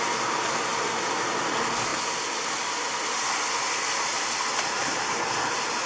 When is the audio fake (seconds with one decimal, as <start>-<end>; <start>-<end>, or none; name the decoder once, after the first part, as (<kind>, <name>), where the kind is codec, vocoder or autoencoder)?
none